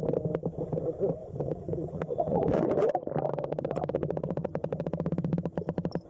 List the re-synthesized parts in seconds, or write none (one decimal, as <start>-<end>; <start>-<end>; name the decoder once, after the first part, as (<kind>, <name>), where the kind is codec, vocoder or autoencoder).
1.2-2.9 (vocoder, Vocos); 3.5-4.8